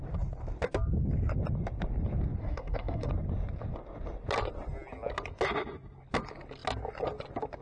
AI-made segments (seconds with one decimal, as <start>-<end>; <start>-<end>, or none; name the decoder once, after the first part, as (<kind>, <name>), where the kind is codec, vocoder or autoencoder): 2.4-3.1 (codec, SNAC)